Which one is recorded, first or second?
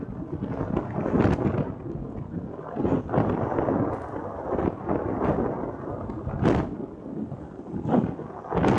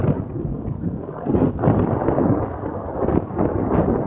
first